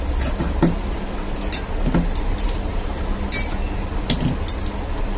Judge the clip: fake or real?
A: real